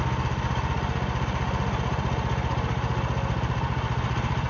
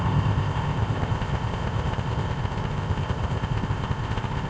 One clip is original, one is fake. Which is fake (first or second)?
second